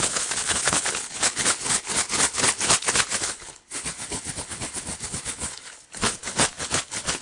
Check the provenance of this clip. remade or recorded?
remade